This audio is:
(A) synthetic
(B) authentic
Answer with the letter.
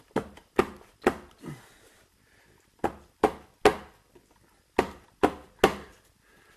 B